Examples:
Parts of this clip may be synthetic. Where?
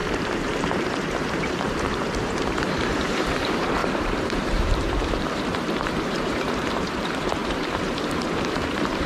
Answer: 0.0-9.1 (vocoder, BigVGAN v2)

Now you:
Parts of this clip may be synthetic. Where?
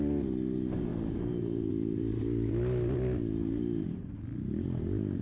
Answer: none